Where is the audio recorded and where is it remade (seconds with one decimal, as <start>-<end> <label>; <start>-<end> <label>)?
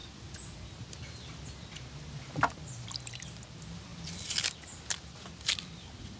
0.0-6.2 recorded